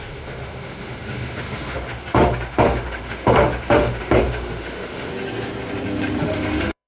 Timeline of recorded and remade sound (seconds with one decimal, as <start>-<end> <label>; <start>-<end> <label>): 0.0-5.1 remade; 5.1-6.2 recorded; 6.2-6.9 remade